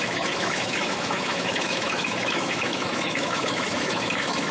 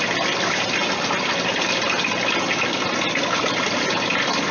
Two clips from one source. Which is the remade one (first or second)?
first